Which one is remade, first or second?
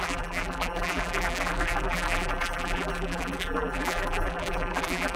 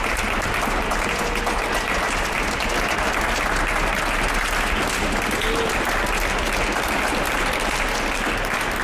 first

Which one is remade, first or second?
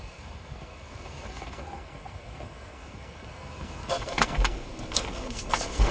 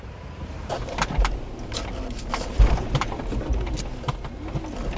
first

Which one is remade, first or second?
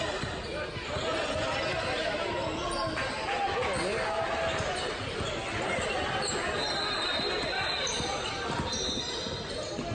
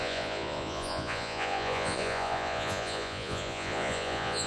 second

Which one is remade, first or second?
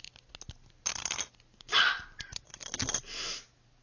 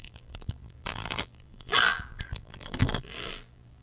second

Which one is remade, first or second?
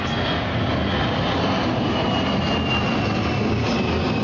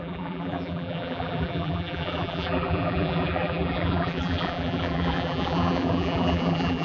second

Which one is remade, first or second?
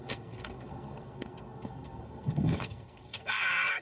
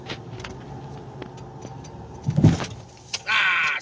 first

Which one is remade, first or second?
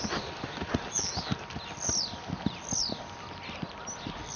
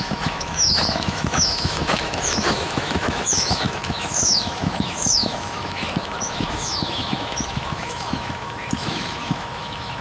second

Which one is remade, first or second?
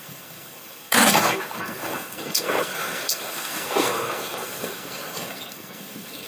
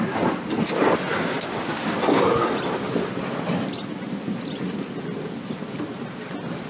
first